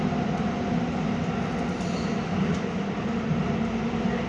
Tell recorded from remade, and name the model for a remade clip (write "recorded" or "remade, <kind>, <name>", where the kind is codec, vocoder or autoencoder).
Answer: recorded